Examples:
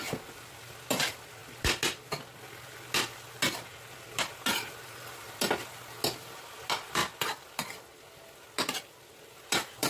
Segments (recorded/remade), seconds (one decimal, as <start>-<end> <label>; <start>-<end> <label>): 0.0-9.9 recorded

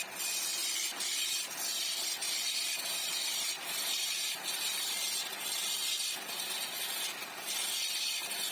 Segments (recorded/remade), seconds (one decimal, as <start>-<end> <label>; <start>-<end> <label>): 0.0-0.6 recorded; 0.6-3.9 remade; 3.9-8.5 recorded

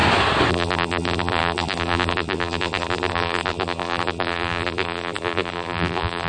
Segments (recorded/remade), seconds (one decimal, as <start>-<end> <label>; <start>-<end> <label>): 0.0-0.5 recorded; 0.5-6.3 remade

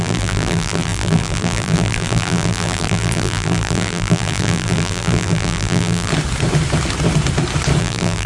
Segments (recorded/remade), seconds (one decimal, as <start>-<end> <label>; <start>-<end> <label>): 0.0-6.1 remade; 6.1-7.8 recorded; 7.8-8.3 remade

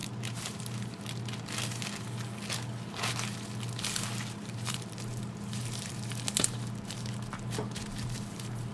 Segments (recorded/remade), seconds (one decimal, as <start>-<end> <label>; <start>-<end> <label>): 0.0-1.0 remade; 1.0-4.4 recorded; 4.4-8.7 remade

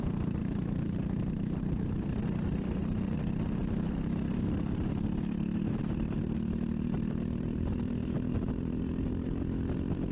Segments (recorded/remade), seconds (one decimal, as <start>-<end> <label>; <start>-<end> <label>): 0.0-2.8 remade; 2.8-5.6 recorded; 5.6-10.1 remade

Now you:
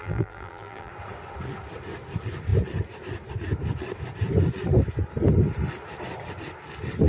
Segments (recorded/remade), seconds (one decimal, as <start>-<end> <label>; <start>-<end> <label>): 0.0-0.9 remade; 0.9-7.1 recorded

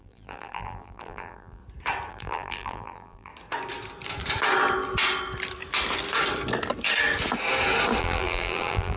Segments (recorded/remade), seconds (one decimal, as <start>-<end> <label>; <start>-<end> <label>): 0.0-1.6 remade; 1.6-2.1 recorded; 2.1-3.3 remade; 3.3-8.0 recorded; 8.0-9.0 remade